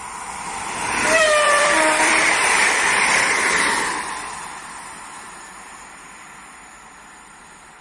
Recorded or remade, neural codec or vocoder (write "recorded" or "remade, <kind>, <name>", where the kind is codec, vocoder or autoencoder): remade, vocoder, BigVGAN v2